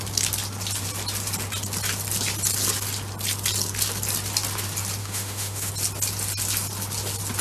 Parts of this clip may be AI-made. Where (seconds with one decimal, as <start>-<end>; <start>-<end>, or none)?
5.0-5.7